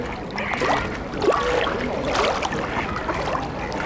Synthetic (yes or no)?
no